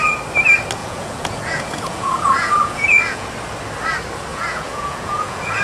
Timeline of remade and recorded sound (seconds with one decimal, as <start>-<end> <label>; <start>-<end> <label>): 0.0-0.8 recorded; 0.8-3.3 remade; 3.3-4.3 recorded; 4.3-5.6 remade